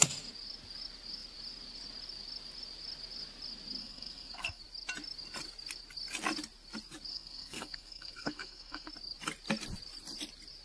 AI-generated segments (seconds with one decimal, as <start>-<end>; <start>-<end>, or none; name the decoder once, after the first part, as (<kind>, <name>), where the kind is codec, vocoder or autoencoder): 3.8-4.6 (codec, SNAC); 7.1-8.9

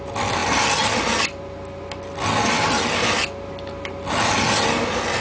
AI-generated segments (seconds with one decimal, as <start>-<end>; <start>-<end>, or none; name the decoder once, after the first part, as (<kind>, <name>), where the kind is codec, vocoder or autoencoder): none

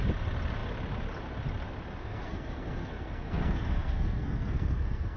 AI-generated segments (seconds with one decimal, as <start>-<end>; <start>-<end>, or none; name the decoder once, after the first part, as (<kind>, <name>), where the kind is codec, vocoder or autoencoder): 2.0-5.2 (codec, SNAC)

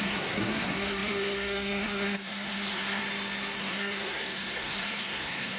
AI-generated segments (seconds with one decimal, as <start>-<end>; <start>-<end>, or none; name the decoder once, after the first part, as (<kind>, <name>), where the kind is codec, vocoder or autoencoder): 0.0-3.0 (codec, SNAC); 3.6-5.6